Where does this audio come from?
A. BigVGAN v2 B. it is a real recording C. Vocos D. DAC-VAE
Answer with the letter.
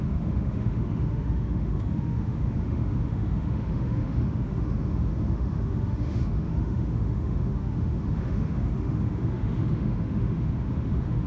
D